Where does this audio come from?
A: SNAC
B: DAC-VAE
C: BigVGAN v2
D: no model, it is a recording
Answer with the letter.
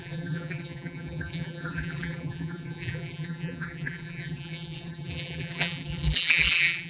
C